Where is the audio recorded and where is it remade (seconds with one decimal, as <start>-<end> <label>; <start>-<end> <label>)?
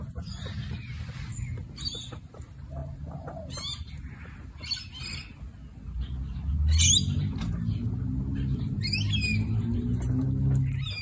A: 0.0-11.0 recorded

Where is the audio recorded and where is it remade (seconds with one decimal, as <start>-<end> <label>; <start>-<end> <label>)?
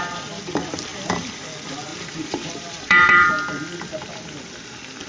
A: 0.0-1.9 recorded; 1.9-3.3 remade; 3.3-5.1 recorded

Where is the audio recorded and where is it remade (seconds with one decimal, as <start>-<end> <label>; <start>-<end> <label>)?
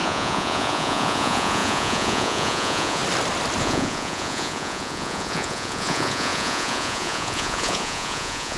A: 0.0-3.0 remade; 3.0-3.6 recorded; 3.6-8.6 remade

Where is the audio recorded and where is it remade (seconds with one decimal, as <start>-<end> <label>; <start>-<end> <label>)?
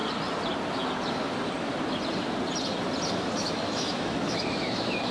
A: 0.0-3.1 recorded; 3.1-5.1 remade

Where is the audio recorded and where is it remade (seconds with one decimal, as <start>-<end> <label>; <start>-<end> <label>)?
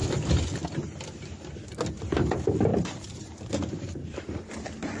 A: 0.0-2.7 recorded; 2.7-4.2 remade; 4.2-5.0 recorded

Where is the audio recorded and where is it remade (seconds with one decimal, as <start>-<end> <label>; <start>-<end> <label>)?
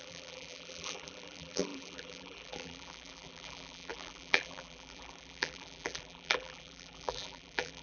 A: 0.0-7.8 remade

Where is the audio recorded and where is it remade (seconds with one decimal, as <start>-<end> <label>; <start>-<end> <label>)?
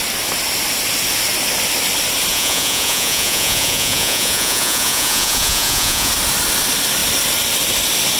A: 0.0-2.3 recorded; 2.3-6.1 remade; 6.1-8.2 recorded